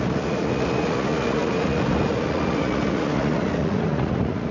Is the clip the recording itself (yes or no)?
no